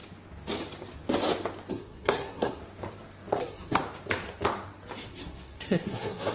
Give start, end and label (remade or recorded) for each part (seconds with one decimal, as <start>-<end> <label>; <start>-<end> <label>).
0.0-1.7 recorded; 1.7-2.6 remade; 2.6-3.4 recorded; 3.4-3.8 remade; 3.8-5.1 recorded; 5.1-6.3 remade